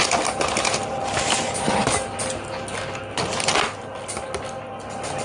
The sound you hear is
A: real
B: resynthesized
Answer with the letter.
A